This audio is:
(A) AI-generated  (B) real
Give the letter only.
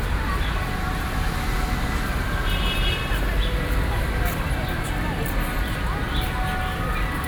B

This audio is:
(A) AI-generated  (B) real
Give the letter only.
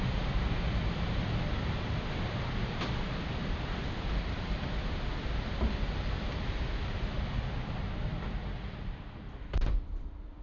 A